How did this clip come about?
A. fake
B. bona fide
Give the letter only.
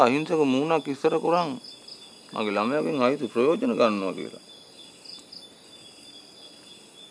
B